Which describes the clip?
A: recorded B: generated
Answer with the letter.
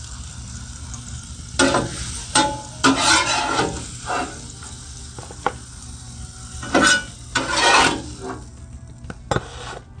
A